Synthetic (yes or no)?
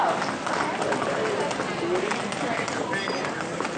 no